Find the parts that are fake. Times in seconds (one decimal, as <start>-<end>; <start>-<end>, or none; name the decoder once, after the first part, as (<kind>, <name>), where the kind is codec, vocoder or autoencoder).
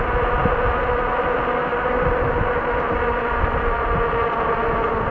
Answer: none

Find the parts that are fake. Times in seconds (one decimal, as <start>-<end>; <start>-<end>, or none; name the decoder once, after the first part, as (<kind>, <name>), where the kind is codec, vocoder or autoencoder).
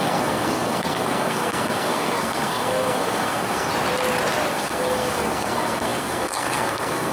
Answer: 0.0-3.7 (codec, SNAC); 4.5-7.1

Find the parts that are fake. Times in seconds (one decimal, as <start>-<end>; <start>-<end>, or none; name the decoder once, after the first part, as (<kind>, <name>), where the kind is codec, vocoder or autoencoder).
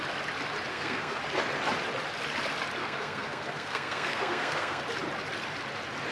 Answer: 0.7-1.2 (codec, SNAC); 2.8-4.8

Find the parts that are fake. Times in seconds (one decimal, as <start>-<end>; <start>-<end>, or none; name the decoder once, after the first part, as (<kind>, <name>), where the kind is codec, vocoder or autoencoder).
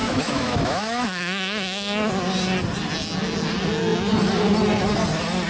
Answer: 0.0-2.1 (autoencoder, DAC-VAE)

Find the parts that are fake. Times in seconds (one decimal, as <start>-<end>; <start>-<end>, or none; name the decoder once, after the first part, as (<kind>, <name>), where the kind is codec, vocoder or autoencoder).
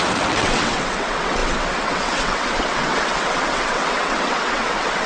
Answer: 0.0-5.1 (vocoder, WaveNeXt)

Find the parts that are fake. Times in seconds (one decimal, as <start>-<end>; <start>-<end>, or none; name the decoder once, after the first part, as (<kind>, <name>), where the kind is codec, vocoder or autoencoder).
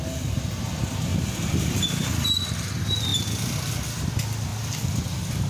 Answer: 1.1-2.1 (vocoder, BigVGAN v2); 4.5-5.5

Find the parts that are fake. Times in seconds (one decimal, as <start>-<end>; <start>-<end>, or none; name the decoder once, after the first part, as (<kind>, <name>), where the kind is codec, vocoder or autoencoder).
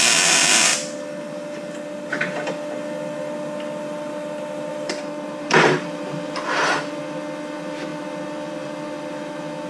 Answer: 4.7-7.0 (vocoder, BigVGAN v2)